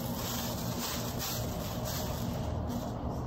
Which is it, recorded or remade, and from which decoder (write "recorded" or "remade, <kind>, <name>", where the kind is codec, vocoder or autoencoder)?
recorded